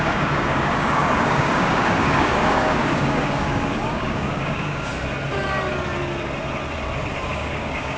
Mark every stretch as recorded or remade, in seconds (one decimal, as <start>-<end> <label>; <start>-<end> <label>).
0.0-4.9 remade; 4.9-7.3 recorded; 7.3-8.0 remade